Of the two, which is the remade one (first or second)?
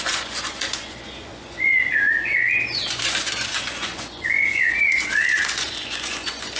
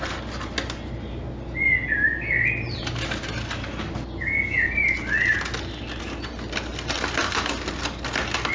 first